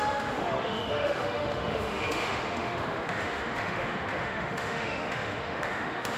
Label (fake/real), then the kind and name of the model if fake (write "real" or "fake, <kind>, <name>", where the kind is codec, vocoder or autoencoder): fake, autoencoder, DAC-VAE